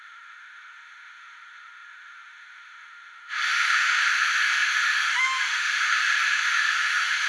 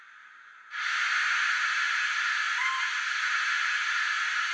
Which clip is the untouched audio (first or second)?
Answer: second